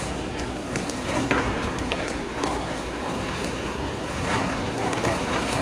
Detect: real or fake fake